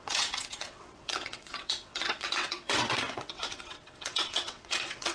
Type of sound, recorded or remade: remade